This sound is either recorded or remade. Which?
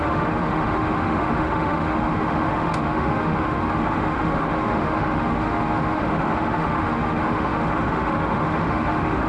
remade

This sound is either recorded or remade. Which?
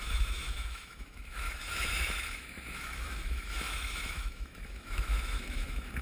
remade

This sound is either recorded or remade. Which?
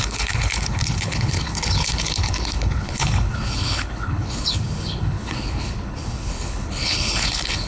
remade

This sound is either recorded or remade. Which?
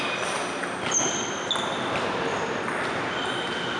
recorded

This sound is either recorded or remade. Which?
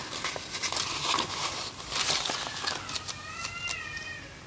recorded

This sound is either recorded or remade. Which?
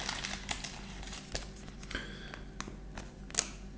recorded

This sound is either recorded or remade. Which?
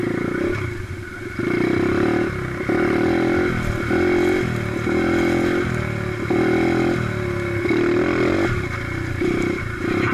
recorded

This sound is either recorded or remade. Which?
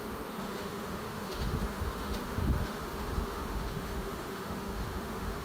remade